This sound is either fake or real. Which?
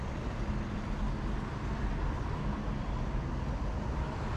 real